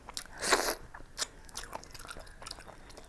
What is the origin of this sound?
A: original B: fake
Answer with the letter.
A